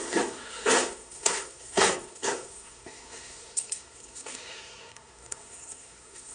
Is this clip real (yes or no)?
no